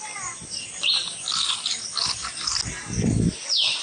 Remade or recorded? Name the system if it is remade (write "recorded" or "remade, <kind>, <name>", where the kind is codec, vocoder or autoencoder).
recorded